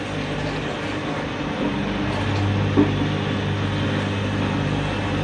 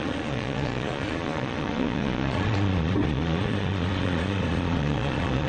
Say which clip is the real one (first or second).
first